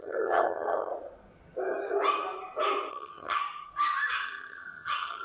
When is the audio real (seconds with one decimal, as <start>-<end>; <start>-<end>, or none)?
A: 0.9-2.9; 3.4-4.1